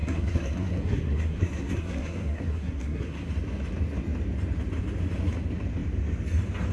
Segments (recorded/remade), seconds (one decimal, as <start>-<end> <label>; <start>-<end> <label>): 0.0-3.3 remade; 3.3-6.7 recorded